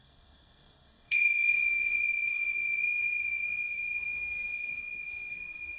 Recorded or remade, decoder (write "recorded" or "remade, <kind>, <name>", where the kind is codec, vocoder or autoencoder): remade, codec, SNAC